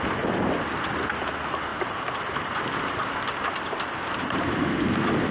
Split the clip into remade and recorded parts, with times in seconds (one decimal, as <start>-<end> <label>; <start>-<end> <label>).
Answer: 0.0-1.7 recorded; 1.7-5.3 remade